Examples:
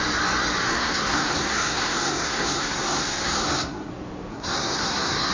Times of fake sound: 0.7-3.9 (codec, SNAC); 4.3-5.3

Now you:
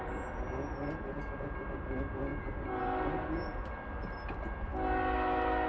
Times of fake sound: none

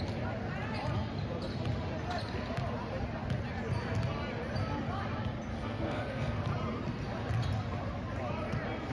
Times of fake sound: 5.5-6.4 (codec, SNAC)